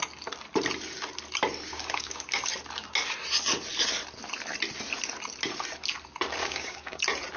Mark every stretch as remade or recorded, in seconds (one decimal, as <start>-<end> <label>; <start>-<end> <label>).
0.0-1.7 recorded; 1.7-2.3 remade; 2.3-6.4 recorded; 6.4-7.0 remade; 7.0-7.4 recorded